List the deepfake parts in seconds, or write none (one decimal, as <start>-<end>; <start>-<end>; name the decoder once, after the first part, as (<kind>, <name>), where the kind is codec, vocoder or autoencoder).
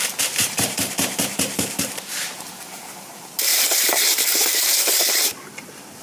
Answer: 0.0-6.0 (vocoder, BigVGAN v2)